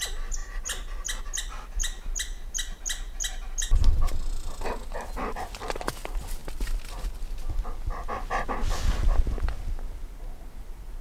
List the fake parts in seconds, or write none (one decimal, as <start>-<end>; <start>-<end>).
none